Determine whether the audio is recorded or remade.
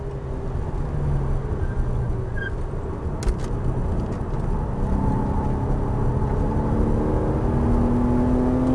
recorded